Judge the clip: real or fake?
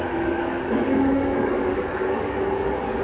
fake